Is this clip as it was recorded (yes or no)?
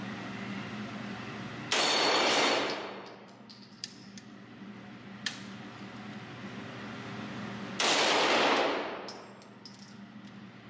yes